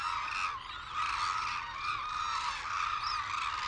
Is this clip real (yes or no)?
yes